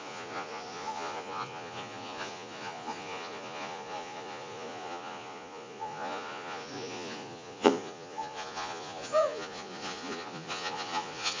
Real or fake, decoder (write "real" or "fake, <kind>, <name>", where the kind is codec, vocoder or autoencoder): fake, vocoder, Vocos